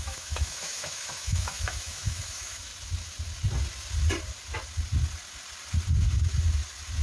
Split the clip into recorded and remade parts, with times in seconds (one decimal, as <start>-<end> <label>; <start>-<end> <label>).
0.0-2.7 remade; 2.7-7.0 recorded